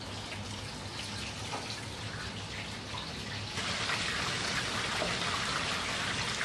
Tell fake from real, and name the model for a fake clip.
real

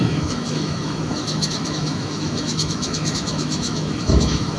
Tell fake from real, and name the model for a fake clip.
fake, autoencoder, DAC-VAE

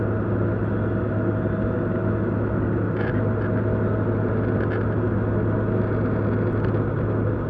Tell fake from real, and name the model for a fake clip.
real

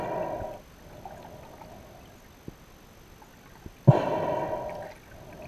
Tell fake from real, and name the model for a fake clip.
real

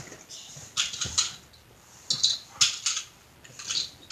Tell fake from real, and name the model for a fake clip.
real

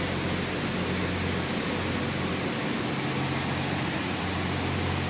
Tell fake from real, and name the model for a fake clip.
real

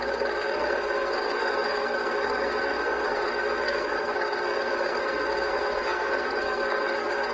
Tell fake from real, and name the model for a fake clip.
fake, codec, SNAC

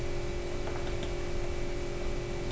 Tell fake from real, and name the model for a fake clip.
real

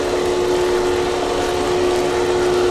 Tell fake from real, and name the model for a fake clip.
real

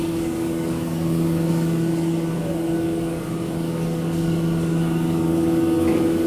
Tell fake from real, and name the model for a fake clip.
fake, codec, DAC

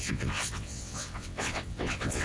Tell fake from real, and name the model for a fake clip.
fake, vocoder, WaveNeXt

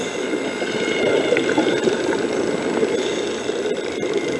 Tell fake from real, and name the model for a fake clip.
real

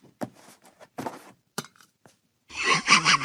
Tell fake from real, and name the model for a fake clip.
fake, vocoder, BigVGAN v2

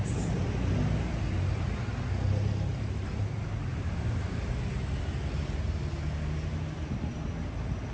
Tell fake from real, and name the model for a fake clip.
real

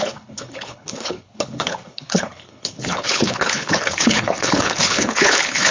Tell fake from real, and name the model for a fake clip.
fake, codec, HILCodec